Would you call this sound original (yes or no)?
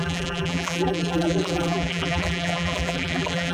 no